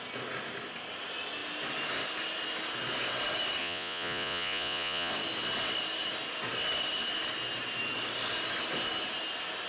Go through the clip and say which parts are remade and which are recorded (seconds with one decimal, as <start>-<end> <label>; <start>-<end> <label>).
0.0-3.6 recorded; 3.6-5.1 remade; 5.1-9.7 recorded